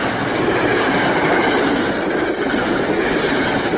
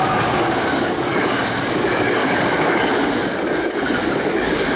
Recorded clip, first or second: first